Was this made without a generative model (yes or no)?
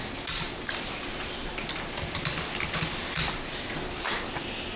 yes